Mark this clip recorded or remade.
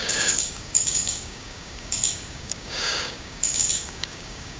remade